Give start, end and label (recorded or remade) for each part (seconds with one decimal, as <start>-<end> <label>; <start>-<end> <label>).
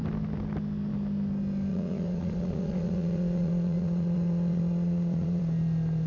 0.0-1.7 recorded; 1.7-5.4 remade; 5.4-6.1 recorded